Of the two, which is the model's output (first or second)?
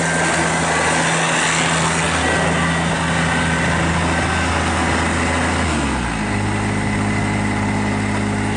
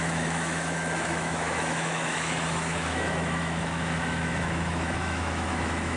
second